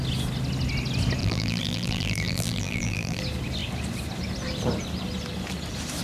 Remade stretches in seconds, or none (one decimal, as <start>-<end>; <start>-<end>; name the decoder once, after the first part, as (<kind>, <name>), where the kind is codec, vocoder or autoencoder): 1.2-3.2 (vocoder, BigVGAN v2)